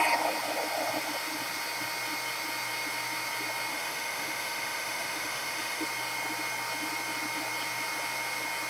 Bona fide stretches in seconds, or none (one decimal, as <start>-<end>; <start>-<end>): 0.0-3.7; 5.8-8.7